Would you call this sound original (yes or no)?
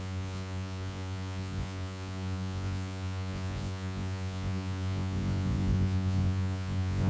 no